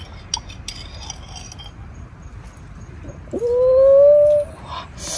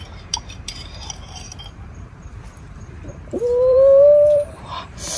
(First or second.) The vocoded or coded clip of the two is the second